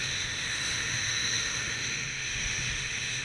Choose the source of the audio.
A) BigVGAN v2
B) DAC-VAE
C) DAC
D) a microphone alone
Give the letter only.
B